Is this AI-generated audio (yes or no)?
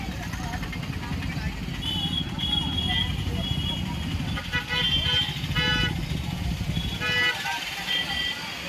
no